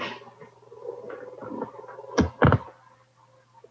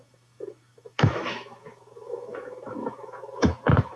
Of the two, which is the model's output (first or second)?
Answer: second